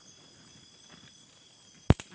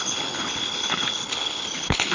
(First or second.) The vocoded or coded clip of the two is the second